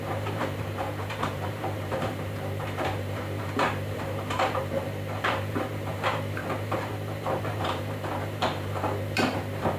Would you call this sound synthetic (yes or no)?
yes